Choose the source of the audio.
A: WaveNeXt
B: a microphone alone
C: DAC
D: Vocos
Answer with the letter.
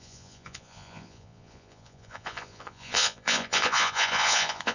D